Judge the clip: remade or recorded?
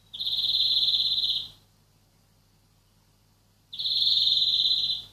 recorded